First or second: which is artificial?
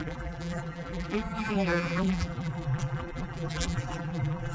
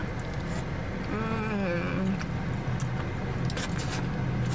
first